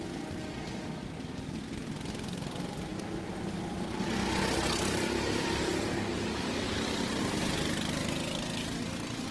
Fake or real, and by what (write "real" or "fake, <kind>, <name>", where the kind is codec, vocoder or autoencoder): real